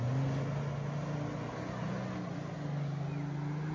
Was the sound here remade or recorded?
recorded